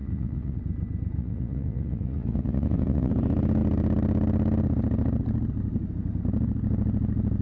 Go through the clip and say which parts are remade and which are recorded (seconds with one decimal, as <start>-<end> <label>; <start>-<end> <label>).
0.0-0.6 remade; 0.6-1.2 recorded; 1.2-3.1 remade; 3.1-7.4 recorded

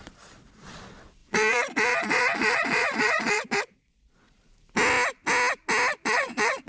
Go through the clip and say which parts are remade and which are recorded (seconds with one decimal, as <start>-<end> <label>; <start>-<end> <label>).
0.0-4.4 remade; 4.4-5.9 recorded; 5.9-6.7 remade

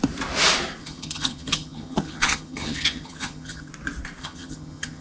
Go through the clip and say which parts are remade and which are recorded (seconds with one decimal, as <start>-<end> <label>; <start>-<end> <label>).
0.0-0.8 recorded; 0.8-3.7 remade; 3.7-4.2 recorded; 4.2-5.0 remade

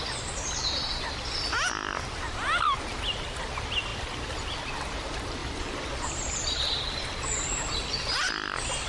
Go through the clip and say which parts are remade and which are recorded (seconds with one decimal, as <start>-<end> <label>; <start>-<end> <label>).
0.0-8.9 recorded

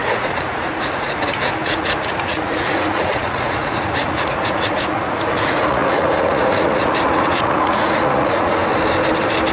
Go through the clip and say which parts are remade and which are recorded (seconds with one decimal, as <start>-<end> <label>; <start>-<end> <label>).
0.0-8.6 remade; 8.6-9.5 recorded

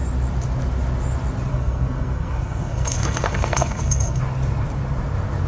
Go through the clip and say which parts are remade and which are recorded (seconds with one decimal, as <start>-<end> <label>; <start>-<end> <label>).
0.0-1.5 recorded; 1.5-4.2 remade; 4.2-5.5 recorded

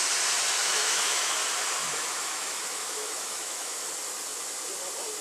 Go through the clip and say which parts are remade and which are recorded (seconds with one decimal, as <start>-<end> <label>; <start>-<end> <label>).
0.0-0.6 recorded; 0.6-1.4 remade; 1.4-1.8 recorded; 1.8-3.9 remade; 3.9-5.2 recorded